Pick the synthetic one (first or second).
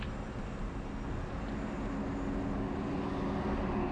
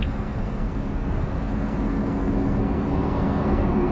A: second